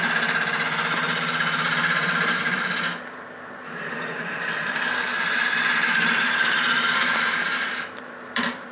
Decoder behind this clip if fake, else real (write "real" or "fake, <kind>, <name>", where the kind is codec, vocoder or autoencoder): fake, vocoder, BigVGAN v2